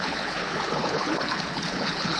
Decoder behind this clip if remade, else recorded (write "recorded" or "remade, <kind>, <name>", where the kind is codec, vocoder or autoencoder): remade, codec, HILCodec